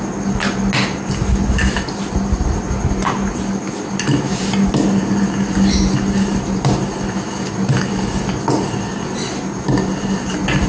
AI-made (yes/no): no